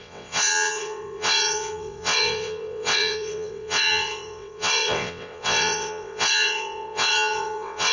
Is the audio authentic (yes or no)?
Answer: no